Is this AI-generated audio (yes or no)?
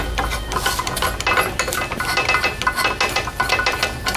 no